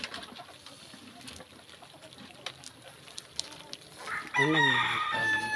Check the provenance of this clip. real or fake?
real